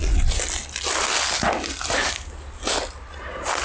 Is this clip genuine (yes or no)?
yes